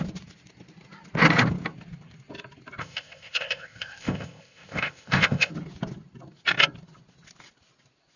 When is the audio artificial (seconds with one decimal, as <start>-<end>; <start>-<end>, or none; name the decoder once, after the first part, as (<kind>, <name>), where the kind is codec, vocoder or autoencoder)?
2.8-5.5 (codec, ZipCodec)

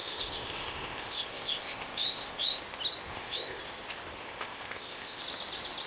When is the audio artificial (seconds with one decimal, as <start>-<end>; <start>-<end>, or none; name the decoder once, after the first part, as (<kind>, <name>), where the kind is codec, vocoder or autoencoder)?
0.0-2.6 (codec, ZipCodec); 3.1-3.6; 4.2-5.2